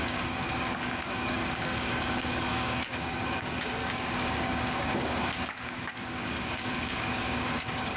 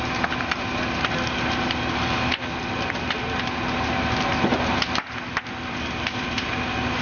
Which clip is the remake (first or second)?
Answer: first